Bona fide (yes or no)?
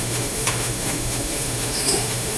no